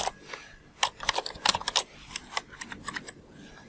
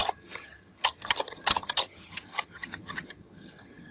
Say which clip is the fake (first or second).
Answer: second